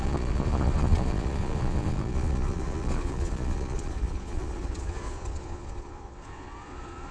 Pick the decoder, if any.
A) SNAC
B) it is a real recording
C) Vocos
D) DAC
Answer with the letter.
C